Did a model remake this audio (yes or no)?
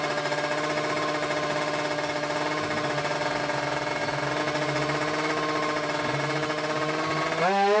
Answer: no